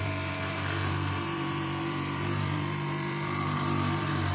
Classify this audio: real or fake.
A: fake